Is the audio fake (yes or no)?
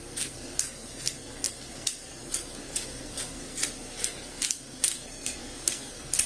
yes